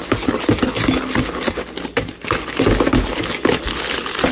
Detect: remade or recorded recorded